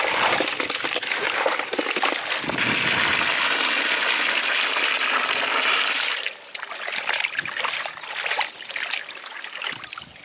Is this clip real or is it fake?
real